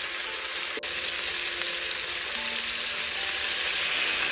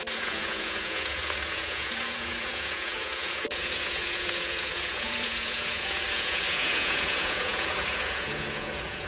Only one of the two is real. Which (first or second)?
first